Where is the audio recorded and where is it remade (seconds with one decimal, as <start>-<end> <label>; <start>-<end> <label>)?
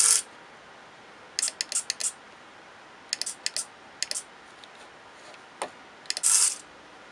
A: 0.0-7.1 recorded